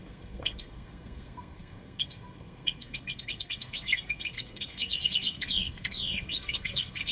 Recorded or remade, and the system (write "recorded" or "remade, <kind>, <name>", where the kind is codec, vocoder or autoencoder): remade, codec, SNAC